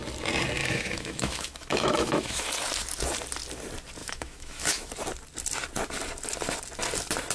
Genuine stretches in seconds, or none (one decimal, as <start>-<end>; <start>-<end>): 0.0-0.6; 2.4-4.0; 4.9-7.3